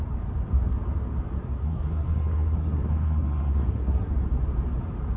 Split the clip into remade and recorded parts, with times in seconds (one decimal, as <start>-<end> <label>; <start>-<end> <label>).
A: 0.0-1.6 recorded; 1.6-4.1 remade; 4.1-5.2 recorded